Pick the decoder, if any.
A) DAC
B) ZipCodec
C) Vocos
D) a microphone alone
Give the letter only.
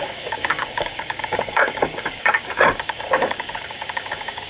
A